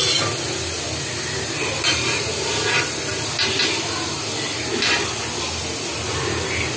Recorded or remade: recorded